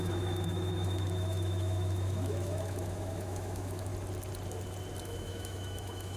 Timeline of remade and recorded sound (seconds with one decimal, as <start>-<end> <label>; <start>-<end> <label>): 0.0-3.9 remade; 3.9-5.0 recorded; 5.0-6.2 remade